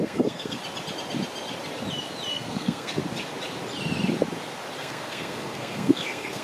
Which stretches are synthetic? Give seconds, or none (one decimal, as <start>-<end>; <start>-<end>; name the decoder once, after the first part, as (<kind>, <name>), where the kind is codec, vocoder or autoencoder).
0.0-0.6 (codec, SNAC); 2.3-3.0; 4.8-6.4